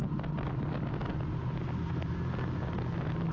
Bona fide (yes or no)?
yes